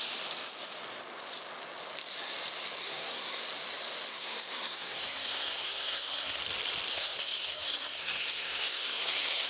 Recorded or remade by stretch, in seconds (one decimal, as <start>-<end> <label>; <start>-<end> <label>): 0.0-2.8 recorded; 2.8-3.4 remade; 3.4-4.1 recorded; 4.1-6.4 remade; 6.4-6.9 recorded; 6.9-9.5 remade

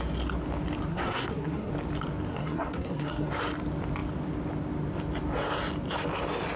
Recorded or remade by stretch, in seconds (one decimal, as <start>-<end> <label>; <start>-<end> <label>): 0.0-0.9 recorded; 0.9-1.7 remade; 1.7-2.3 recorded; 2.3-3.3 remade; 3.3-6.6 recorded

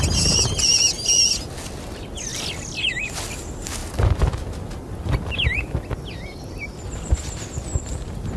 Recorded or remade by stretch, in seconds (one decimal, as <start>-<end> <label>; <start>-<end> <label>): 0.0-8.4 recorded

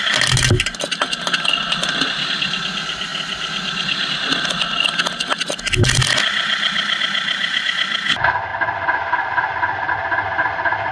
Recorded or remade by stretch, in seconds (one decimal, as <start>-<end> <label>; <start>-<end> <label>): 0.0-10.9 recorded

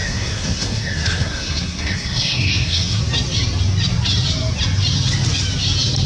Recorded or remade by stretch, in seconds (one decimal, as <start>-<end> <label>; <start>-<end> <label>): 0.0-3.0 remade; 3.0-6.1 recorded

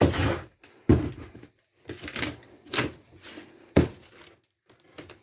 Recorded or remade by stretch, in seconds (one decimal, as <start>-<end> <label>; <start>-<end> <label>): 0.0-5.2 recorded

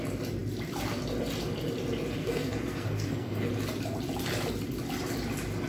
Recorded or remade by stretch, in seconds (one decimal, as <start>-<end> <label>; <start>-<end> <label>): 0.0-2.2 recorded; 2.2-3.5 remade; 3.5-5.7 recorded